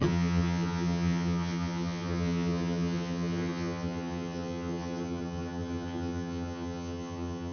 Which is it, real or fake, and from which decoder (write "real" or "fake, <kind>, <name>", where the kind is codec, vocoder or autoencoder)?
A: fake, vocoder, HiFi-GAN